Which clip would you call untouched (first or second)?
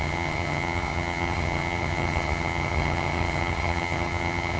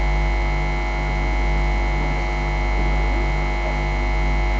second